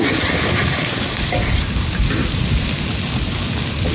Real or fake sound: real